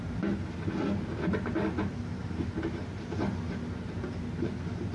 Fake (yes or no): yes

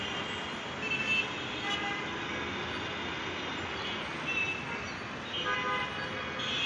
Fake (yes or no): no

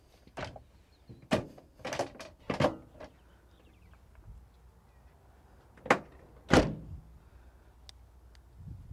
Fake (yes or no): no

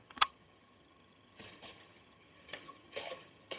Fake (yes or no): yes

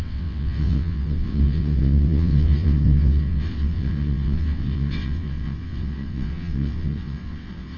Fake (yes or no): yes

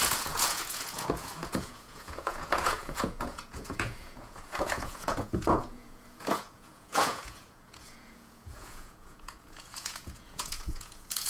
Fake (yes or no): yes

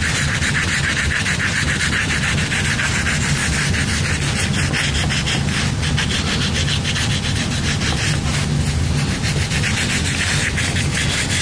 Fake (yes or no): no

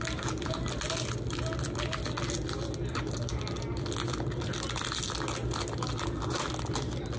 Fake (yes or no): no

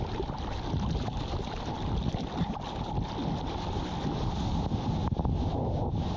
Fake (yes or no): no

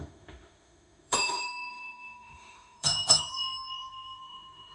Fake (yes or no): yes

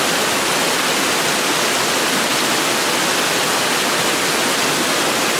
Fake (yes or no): no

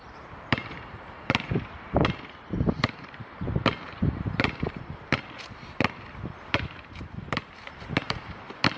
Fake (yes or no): yes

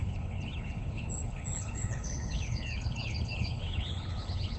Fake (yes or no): yes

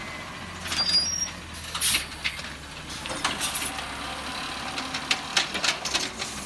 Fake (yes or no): no